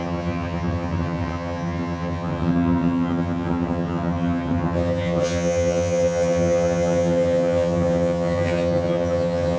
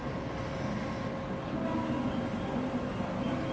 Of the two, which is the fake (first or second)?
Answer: first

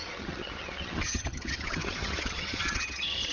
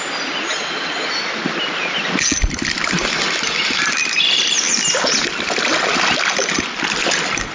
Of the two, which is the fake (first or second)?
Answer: first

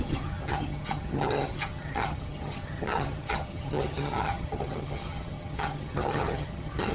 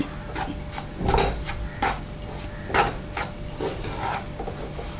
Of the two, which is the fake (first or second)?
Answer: first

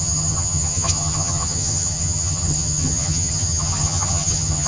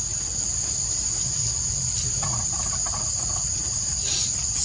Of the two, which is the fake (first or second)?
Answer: first